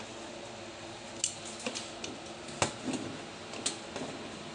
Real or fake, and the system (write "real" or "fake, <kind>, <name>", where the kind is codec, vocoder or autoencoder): real